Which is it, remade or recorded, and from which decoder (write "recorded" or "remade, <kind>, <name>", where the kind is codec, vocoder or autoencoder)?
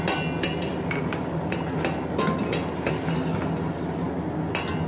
recorded